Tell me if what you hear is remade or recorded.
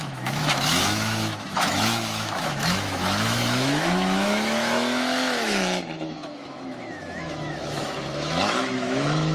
remade